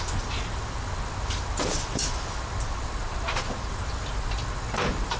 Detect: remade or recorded recorded